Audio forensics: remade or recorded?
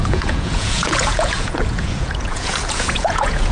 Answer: remade